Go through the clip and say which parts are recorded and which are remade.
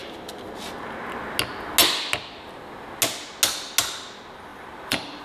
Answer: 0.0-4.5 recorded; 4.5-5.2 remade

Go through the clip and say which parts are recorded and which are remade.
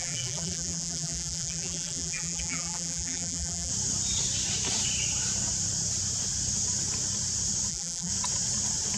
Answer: 0.0-3.7 remade; 3.7-7.7 recorded; 7.7-8.1 remade; 8.1-9.0 recorded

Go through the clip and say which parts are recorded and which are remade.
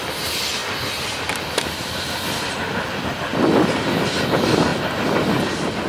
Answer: 0.0-5.9 recorded